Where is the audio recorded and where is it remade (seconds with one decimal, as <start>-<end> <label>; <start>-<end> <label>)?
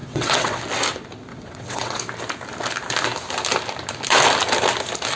0.0-0.6 remade; 0.6-1.3 recorded; 1.3-2.0 remade; 2.0-5.2 recorded